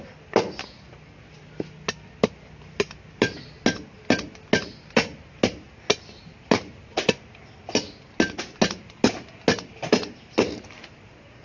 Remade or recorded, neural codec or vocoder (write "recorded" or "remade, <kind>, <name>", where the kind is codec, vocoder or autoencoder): recorded